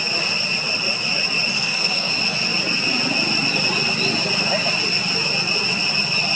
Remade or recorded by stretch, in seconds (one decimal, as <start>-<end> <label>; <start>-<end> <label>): 0.0-1.5 recorded; 1.5-2.1 remade; 2.1-6.4 recorded